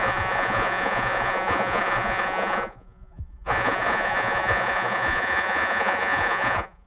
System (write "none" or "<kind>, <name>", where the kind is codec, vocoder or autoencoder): vocoder, Vocos